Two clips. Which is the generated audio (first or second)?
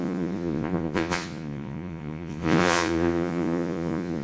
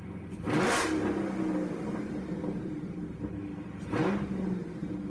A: first